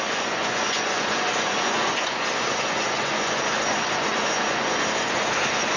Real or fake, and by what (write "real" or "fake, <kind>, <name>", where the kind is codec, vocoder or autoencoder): fake, vocoder, Vocos